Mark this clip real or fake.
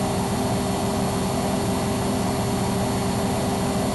real